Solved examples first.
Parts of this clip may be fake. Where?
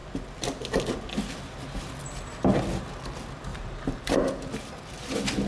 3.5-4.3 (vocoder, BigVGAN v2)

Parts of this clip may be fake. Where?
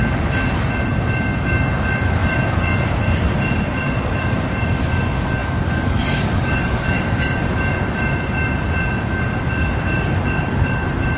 5.4-7.0 (codec, DAC)